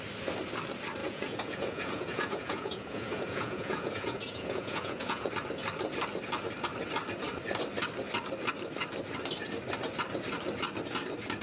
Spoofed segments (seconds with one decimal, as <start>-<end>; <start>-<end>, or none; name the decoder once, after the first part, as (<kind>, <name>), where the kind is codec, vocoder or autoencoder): 1.0-5.3 (vocoder, Vocos)